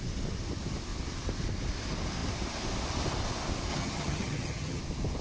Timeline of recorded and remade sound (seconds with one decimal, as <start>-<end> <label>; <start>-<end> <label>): 0.0-3.7 recorded; 3.7-4.8 remade; 4.8-5.2 recorded